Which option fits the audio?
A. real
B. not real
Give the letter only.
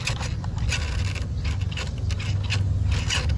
A